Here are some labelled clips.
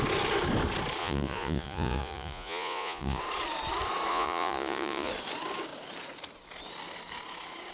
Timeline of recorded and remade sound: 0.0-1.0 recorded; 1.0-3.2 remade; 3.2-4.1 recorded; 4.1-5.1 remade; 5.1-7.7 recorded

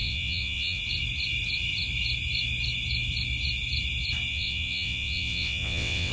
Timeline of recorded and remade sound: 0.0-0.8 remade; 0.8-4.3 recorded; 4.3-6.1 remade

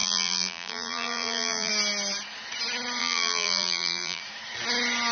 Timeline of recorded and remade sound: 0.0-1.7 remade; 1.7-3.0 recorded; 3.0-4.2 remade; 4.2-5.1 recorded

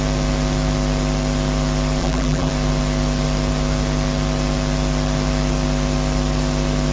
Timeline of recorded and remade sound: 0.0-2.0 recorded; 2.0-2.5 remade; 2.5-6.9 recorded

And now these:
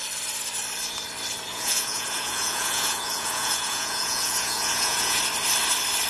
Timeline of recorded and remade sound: 0.0-1.5 recorded; 1.5-5.2 remade; 5.2-6.1 recorded